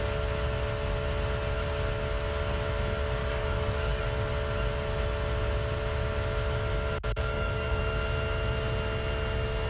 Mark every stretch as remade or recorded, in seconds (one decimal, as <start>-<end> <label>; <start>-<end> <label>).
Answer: 0.0-3.2 recorded; 3.2-4.0 remade; 4.0-7.2 recorded; 7.2-7.8 remade; 7.8-9.7 recorded

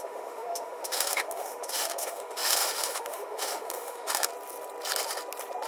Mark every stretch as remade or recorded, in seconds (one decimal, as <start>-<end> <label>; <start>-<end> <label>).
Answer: 0.0-4.3 remade; 4.3-5.7 recorded

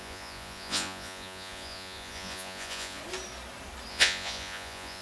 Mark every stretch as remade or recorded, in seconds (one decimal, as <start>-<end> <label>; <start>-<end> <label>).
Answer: 0.0-3.0 remade; 3.0-3.9 recorded; 3.9-5.0 remade

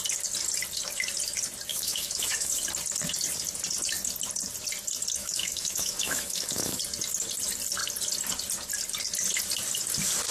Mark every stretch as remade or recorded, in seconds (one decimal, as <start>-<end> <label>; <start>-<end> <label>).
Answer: 0.0-1.7 recorded; 1.7-2.5 remade; 2.5-5.2 recorded; 5.2-6.8 remade; 6.8-10.3 recorded

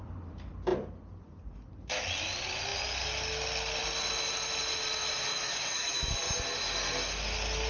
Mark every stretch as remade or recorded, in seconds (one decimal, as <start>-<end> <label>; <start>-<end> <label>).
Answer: 0.0-5.3 recorded; 5.3-6.1 remade; 6.1-7.7 recorded

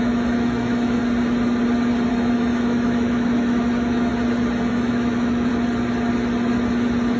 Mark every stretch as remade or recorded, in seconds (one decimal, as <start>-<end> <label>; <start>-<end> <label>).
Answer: 0.0-1.0 remade; 1.0-2.1 recorded; 2.1-4.1 remade; 4.1-4.7 recorded; 4.7-5.5 remade; 5.5-7.2 recorded

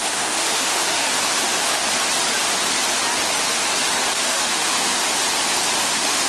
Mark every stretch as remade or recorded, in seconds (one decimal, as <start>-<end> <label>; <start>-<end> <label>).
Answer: 0.0-1.8 remade; 1.8-4.2 recorded; 4.2-4.9 remade; 4.9-5.8 recorded; 5.8-6.3 remade

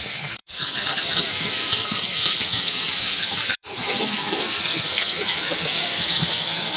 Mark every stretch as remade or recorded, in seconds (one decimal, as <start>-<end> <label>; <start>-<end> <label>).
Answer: 0.0-6.8 remade